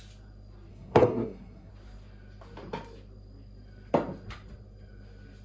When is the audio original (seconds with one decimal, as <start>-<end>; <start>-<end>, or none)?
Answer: 0.0-0.7; 1.7-5.4